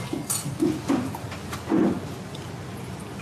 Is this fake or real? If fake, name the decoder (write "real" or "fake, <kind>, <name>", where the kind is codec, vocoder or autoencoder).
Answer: real